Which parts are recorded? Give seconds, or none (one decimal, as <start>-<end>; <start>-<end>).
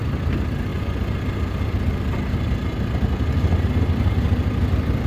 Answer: 0.0-5.1